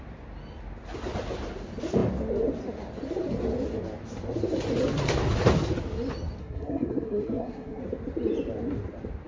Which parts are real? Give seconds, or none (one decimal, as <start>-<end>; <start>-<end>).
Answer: 0.0-6.4; 7.8-9.3